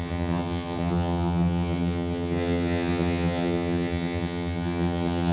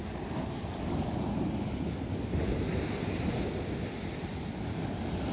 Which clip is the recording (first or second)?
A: second